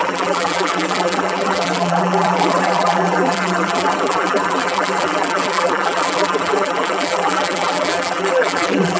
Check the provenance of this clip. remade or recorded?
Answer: remade